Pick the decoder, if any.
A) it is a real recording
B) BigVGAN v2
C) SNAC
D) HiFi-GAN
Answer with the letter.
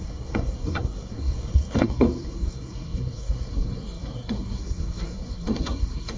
C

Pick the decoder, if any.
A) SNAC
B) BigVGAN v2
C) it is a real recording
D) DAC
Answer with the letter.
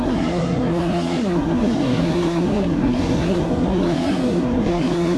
A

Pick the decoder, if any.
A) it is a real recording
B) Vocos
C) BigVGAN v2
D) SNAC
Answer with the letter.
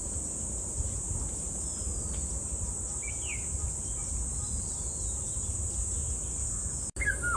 A